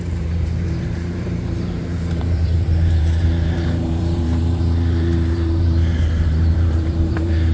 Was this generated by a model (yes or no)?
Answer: yes